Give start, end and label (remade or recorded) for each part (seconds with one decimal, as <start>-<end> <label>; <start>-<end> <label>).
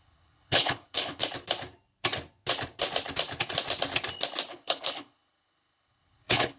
0.0-1.2 remade; 1.2-4.5 recorded; 4.5-6.6 remade